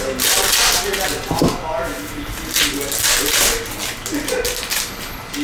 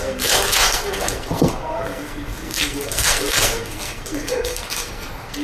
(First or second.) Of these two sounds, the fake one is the second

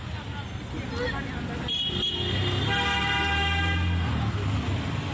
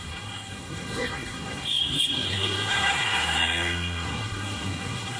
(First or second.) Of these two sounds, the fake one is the second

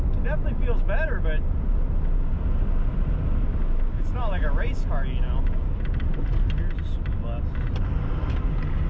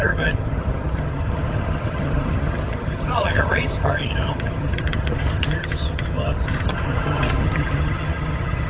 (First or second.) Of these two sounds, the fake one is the second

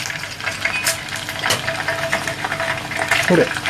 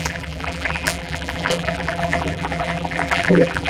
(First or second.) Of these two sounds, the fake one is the second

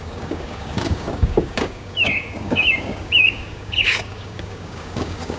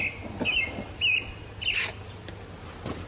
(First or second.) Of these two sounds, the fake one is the first